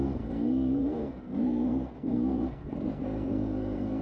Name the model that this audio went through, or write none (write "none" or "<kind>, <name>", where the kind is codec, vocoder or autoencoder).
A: codec, SNAC